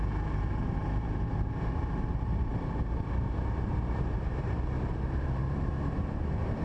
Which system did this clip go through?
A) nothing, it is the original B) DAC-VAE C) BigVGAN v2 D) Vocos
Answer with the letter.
C